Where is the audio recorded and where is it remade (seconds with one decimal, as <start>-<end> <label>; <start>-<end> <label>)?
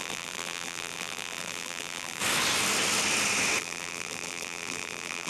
0.0-2.2 remade; 2.2-3.6 recorded; 3.6-5.3 remade